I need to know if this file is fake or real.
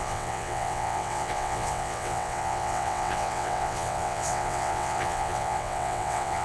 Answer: fake